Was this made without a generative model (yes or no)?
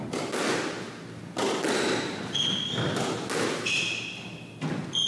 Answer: yes